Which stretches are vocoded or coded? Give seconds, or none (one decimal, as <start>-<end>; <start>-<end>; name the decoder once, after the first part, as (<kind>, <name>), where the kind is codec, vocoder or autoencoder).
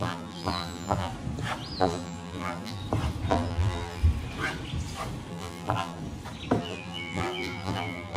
0.0-1.1 (vocoder, BigVGAN v2); 1.8-2.8; 3.3-4.0; 5.3-6.0; 6.6-8.2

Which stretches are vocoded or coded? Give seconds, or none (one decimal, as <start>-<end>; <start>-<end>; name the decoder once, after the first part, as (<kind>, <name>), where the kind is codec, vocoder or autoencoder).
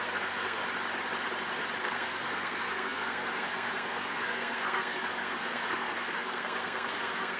0.0-0.6 (codec, SNAC); 1.8-7.4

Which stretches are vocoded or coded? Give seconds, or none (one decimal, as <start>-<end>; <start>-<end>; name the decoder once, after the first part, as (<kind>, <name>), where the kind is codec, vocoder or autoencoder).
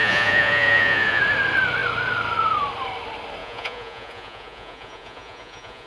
0.0-1.2 (vocoder, Vocos); 3.4-5.9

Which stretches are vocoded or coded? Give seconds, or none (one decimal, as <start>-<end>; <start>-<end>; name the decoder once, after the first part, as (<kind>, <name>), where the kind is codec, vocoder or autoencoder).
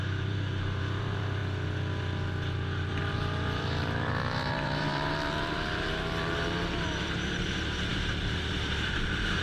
0.0-1.4 (vocoder, BigVGAN v2); 2.9-9.4